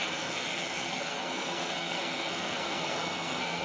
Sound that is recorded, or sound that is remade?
remade